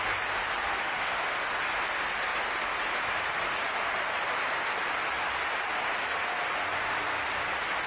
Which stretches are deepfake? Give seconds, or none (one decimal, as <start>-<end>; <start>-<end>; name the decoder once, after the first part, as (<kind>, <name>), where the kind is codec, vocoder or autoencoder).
0.8-1.3 (autoencoder, DAC-VAE)